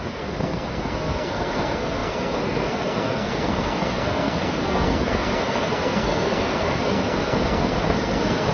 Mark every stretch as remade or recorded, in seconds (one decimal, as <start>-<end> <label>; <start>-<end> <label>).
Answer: 0.0-8.5 remade